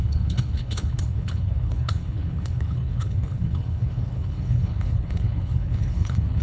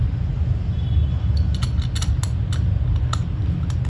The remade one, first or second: first